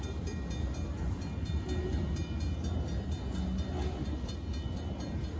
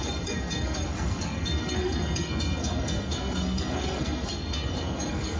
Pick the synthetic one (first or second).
second